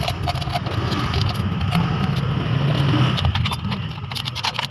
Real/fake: real